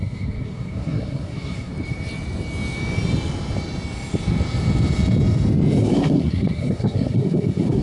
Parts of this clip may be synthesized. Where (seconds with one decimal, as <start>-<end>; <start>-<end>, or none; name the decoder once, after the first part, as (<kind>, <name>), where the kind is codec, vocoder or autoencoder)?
0.0-1.7 (codec, SNAC); 5.8-7.8